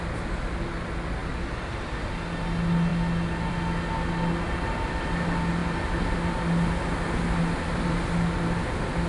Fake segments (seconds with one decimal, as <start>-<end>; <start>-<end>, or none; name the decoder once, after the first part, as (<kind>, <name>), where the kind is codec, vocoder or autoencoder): 1.2-2.0 (vocoder, BigVGAN v2)